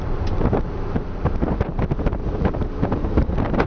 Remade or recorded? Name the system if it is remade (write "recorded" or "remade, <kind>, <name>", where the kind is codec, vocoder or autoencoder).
remade, vocoder, BigVGAN v2